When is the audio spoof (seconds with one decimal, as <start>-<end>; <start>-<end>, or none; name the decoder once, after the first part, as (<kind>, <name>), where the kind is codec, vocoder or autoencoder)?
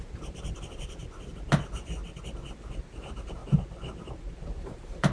0.0-1.0 (vocoder, BigVGAN v2); 2.8-3.4; 4.4-5.1